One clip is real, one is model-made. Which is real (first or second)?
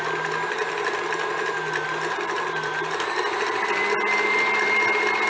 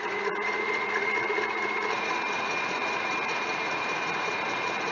first